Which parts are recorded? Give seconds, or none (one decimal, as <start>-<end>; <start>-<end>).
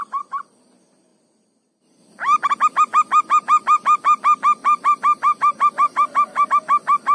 0.0-4.6; 6.5-7.1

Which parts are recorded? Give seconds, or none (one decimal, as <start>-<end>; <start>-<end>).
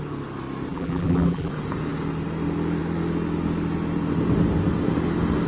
0.0-0.7; 1.5-5.5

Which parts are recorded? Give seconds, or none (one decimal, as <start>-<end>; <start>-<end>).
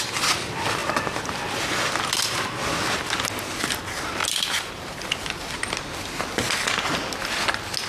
0.0-4.2; 5.8-7.9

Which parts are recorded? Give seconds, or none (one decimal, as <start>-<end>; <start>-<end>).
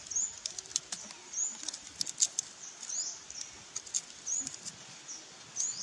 0.0-5.8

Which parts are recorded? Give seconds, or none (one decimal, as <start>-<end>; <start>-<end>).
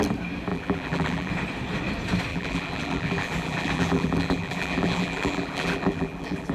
0.0-0.5; 1.3-2.3